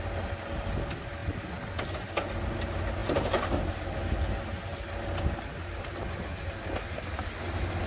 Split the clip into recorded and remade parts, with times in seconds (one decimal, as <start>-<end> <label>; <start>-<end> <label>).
0.0-7.9 recorded